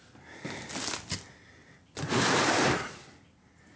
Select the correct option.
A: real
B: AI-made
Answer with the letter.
A